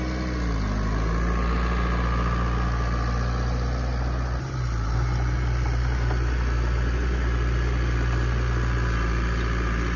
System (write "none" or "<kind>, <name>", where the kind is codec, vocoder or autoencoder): none